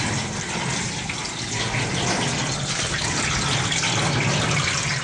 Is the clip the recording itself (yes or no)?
yes